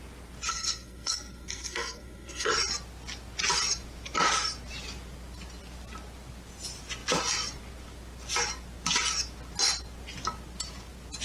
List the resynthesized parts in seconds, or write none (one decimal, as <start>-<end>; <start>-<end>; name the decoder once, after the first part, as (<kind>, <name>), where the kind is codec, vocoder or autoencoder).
0.5-2.5 (codec, SNAC)